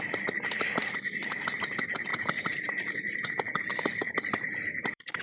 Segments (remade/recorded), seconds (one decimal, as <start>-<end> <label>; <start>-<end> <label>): 0.0-0.8 recorded; 0.8-1.7 remade; 1.7-2.1 recorded; 2.1-5.2 remade